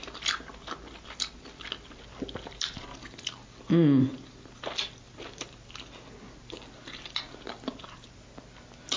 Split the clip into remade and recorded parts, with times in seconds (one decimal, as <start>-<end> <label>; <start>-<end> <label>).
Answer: 0.0-9.0 recorded